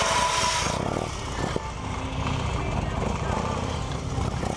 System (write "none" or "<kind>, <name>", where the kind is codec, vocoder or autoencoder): none